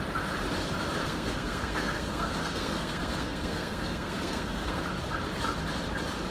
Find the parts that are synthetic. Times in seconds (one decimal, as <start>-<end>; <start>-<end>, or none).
1.0-4.8